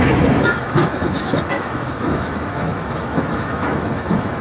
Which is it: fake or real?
fake